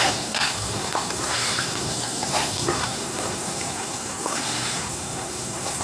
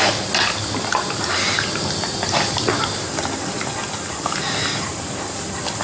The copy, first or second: first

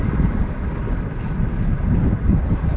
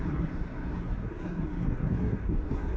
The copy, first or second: second